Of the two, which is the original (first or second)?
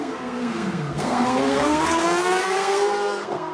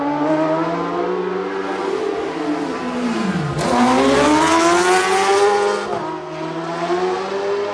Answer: second